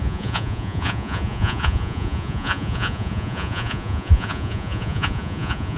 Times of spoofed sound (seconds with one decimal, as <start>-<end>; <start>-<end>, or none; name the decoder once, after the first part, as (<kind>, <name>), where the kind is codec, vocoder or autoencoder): 0.0-5.8 (vocoder, Vocos)